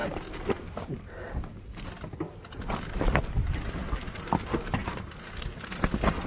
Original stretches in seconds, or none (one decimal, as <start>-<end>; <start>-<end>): 0.0-6.3